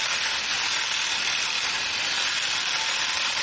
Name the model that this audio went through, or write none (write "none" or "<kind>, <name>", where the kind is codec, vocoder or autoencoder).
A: none